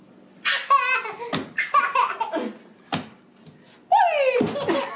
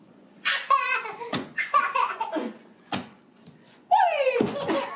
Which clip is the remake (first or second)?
second